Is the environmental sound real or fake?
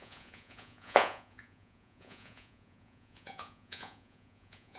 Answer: fake